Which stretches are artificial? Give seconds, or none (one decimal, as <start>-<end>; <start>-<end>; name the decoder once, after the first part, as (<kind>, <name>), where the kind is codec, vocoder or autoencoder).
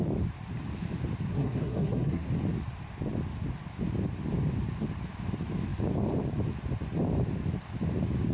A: 1.3-2.3 (codec, SNAC)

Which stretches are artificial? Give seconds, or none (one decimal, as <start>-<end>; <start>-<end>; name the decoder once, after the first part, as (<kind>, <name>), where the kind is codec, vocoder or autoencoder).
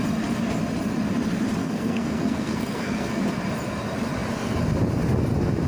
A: 1.6-3.2 (codec, SNAC)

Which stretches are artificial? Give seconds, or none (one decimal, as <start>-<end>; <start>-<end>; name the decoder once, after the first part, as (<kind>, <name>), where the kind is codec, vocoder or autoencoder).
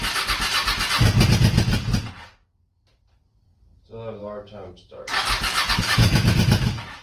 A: 4.2-5.1 (autoencoder, DAC-VAE); 5.8-7.0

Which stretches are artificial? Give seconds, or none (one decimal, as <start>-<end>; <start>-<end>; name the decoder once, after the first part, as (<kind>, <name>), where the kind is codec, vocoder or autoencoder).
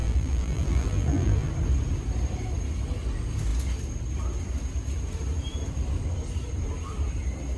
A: 0.0-1.5 (vocoder, BigVGAN v2)